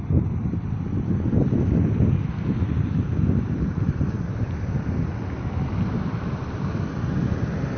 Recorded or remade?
recorded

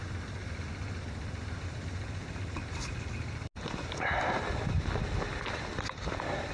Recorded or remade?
recorded